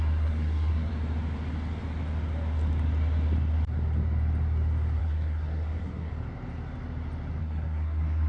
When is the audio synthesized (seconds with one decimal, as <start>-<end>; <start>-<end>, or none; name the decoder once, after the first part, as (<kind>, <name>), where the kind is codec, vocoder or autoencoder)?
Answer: 0.0-0.9 (codec, SNAC); 5.0-6.1; 7.4-8.3